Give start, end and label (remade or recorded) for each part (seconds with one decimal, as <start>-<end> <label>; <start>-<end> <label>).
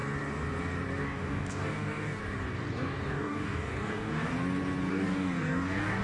0.0-1.0 recorded; 1.0-2.2 remade; 2.2-2.7 recorded; 2.7-4.3 remade; 4.3-4.9 recorded; 4.9-6.0 remade